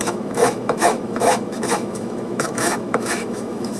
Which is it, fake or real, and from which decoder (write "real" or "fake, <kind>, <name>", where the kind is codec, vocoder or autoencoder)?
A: fake, autoencoder, DAC-VAE